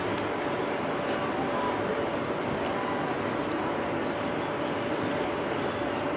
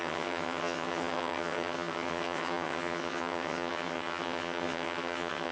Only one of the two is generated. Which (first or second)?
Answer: second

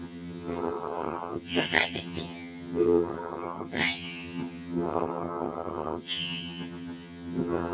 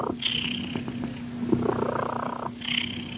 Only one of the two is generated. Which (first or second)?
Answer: first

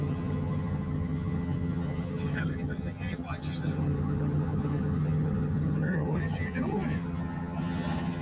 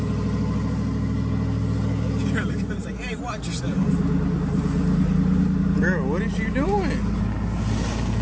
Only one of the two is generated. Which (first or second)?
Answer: first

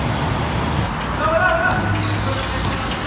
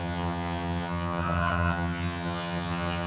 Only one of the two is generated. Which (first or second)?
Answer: second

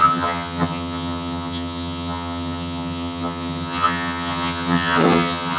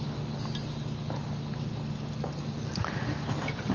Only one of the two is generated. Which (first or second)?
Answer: first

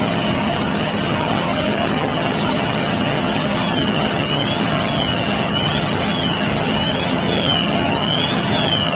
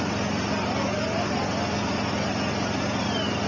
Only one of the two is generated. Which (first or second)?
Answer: first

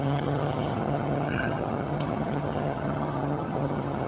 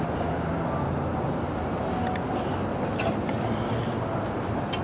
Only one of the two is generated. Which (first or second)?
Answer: first